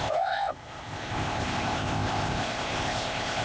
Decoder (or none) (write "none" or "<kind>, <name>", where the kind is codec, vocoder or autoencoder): codec, ZipCodec